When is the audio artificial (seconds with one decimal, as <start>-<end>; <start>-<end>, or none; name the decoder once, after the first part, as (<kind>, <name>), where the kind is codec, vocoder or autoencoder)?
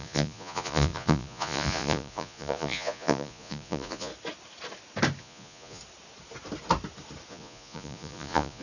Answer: 0.0-4.1 (vocoder, Vocos); 5.2-5.8; 7.3-8.6